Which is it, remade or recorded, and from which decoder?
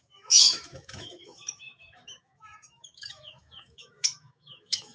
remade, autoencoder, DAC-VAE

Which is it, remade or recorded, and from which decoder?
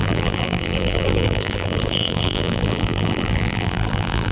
remade, vocoder, BigVGAN v2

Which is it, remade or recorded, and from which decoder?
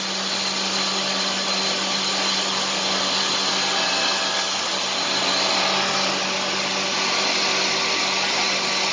recorded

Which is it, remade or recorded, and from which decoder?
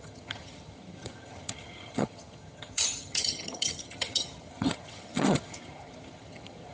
remade, vocoder, HiFi-GAN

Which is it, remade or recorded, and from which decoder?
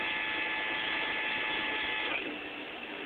recorded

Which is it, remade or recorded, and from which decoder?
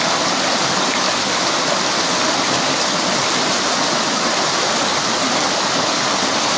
recorded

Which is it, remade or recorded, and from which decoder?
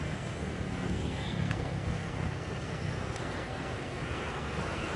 remade, codec, SNAC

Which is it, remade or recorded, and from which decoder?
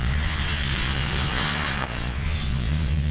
remade, vocoder, Vocos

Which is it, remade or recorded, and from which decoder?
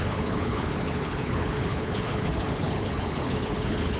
remade, codec, HILCodec